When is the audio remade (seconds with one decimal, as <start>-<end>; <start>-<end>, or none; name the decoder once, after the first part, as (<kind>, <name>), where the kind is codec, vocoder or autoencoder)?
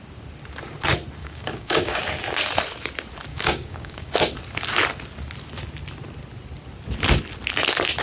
1.2-2.0 (codec, DAC); 3.3-4.1